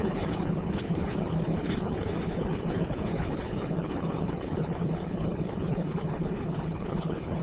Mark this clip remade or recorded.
remade